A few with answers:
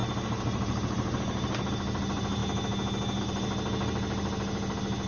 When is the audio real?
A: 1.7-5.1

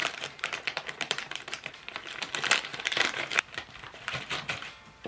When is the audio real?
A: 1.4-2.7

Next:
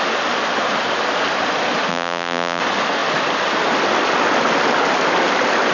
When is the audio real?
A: 0.0-1.9; 2.6-5.7

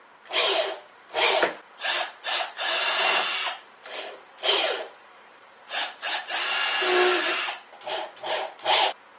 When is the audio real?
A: 0.0-2.8; 6.1-9.2

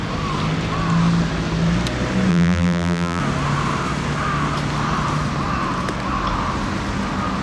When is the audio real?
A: 0.0-2.3; 3.2-7.4